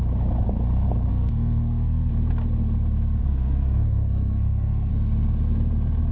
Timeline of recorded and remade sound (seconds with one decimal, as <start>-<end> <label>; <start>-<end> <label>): 0.0-1.1 recorded; 1.1-2.1 remade; 2.1-3.2 recorded; 3.2-4.9 remade; 4.9-6.1 recorded